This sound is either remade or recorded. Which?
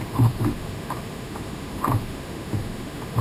remade